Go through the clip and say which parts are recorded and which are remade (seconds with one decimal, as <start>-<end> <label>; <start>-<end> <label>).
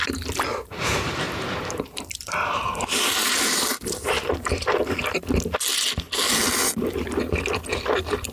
0.0-0.5 recorded; 0.5-5.0 remade; 5.0-8.3 recorded